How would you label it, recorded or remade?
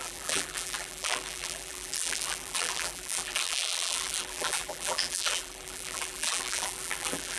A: remade